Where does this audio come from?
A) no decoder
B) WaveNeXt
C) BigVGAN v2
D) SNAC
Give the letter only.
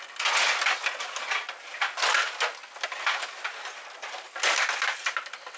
A